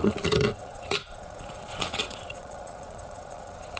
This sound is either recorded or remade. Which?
remade